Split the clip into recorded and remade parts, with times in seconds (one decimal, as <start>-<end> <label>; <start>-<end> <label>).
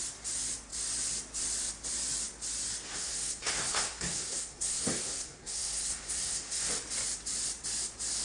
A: 0.0-2.8 recorded; 2.8-6.7 remade; 6.7-8.2 recorded